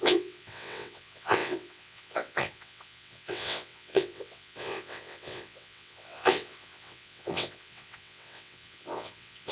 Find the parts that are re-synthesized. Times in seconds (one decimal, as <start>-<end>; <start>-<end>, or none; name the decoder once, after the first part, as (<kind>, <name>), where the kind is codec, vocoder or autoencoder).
0.0-9.5 (vocoder, WaveNeXt)